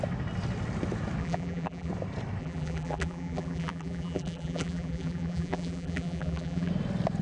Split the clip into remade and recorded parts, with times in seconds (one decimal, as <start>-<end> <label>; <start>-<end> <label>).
0.0-1.2 recorded; 1.2-1.9 remade; 1.9-2.4 recorded; 2.4-6.7 remade; 6.7-7.2 recorded